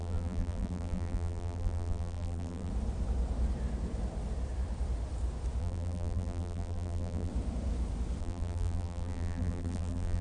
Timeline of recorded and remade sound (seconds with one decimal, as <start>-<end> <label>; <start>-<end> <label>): 0.0-2.7 remade; 2.7-5.6 recorded; 5.6-7.3 remade; 7.3-8.2 recorded; 8.2-10.2 remade